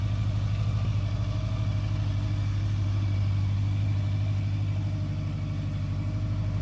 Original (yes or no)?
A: yes